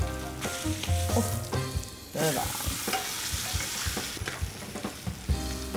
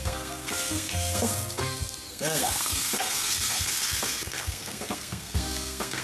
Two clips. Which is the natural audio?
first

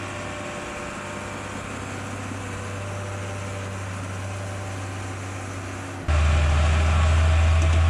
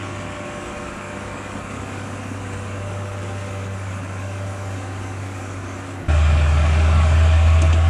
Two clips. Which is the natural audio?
first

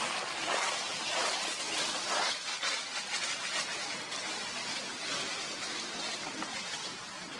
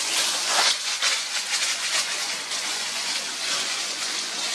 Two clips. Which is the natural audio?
first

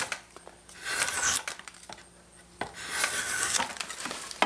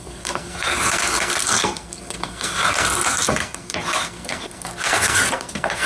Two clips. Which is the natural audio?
first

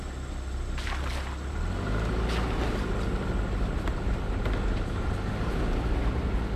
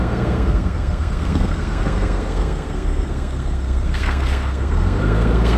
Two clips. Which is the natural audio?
first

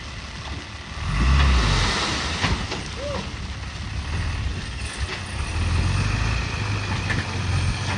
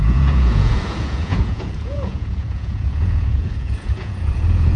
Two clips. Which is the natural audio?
first